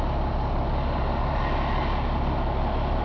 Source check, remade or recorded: recorded